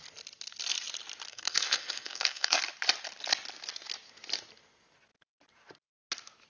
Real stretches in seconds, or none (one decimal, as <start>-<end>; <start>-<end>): 0.0-1.3; 2.6-6.5